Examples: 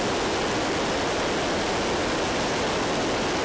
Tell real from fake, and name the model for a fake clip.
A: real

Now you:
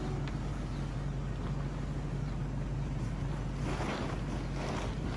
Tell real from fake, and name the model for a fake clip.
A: real